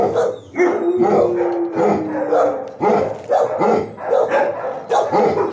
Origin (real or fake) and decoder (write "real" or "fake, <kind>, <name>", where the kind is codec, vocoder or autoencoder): real